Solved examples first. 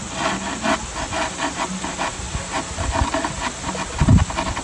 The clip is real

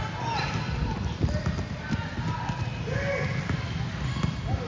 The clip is real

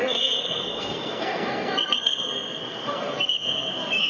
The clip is fake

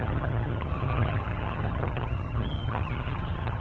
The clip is fake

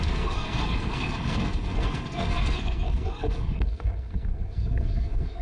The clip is fake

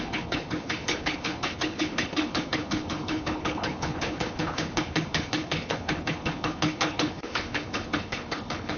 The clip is fake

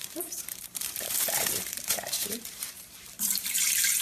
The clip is fake